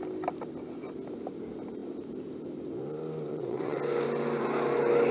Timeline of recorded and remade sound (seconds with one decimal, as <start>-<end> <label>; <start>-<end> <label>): 0.0-3.3 recorded; 3.3-3.8 remade; 3.8-5.1 recorded